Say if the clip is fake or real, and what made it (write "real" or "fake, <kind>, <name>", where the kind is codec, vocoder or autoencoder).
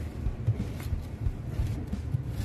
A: real